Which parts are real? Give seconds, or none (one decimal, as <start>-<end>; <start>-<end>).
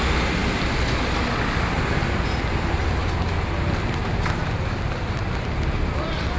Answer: 0.0-6.4